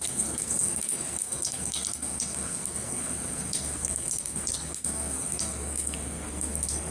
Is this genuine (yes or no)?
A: no